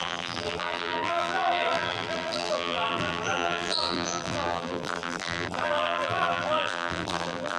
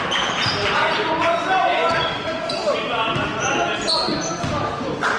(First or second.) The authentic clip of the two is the second